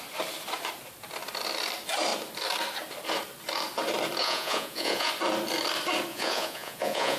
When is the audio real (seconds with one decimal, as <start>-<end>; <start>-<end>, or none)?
0.0-4.2; 5.1-6.1